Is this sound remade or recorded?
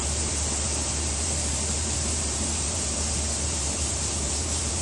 remade